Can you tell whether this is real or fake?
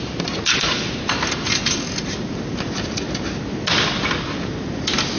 real